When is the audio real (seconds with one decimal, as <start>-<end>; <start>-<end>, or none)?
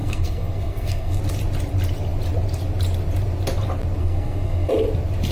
1.2-4.0; 4.7-5.3